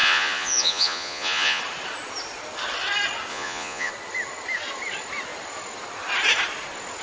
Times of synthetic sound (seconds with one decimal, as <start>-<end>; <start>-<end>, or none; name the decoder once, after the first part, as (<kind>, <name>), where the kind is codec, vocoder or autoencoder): 0.0-1.6 (vocoder, Vocos); 3.3-3.9